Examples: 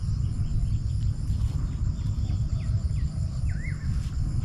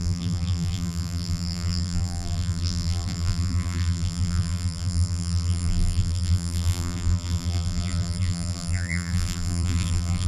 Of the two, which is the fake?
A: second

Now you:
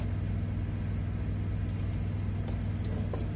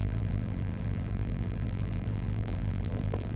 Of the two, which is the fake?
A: second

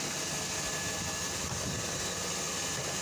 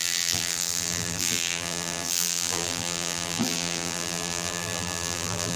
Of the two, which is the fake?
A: second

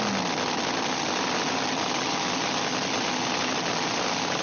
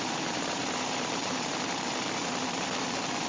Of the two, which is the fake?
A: second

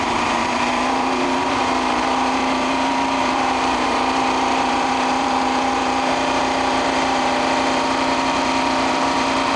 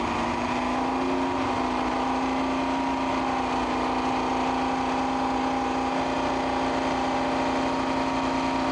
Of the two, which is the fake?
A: first